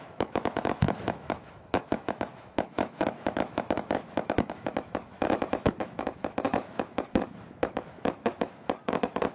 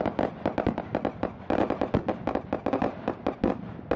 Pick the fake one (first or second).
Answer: first